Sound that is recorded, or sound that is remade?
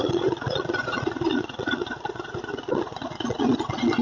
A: remade